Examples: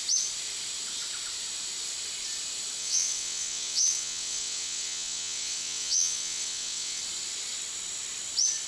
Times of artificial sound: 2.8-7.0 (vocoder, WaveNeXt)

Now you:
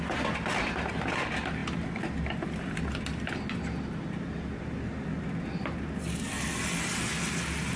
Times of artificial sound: none

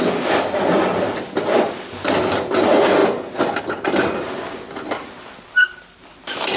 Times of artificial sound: none